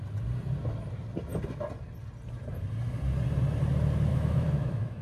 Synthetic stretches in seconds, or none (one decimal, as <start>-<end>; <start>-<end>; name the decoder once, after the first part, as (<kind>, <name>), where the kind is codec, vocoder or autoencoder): 4.1-5.0 (autoencoder, DAC-VAE)